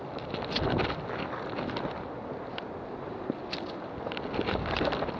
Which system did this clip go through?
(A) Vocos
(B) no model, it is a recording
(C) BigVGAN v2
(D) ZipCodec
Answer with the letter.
B